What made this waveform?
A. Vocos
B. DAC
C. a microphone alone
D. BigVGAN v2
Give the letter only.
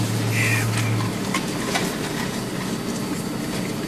C